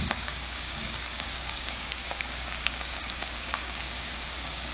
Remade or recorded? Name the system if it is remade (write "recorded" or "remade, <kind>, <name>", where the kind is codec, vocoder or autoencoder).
remade, codec, DAC